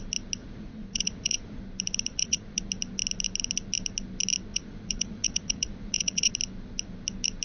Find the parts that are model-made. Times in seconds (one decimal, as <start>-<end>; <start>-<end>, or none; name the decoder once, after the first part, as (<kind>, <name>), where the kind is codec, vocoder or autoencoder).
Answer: 0.4-1.6 (vocoder, Vocos); 2.1-2.6; 4.5-6.3